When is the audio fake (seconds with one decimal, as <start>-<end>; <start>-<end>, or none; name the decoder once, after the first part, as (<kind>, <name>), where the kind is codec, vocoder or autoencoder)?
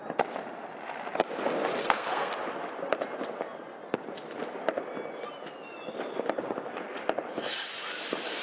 1.8-2.3 (codec, SNAC)